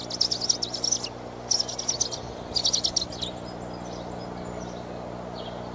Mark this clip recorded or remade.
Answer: recorded